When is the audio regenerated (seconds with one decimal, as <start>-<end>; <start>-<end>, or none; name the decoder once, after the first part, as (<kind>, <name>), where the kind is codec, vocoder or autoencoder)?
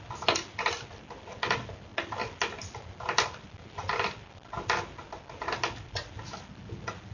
none